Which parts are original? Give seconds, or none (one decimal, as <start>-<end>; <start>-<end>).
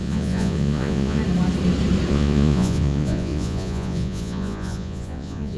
1.2-2.1